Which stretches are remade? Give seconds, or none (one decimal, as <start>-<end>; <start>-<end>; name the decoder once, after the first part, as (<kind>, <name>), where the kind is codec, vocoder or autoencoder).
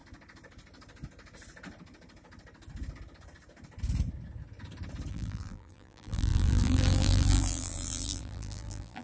5.1-9.0 (vocoder, BigVGAN v2)